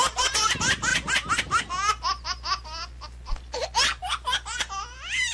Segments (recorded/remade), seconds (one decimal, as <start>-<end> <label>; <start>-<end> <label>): 0.0-5.3 recorded